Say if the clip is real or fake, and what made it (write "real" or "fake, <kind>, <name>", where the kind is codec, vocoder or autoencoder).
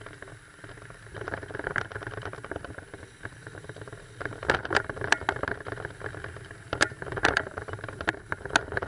real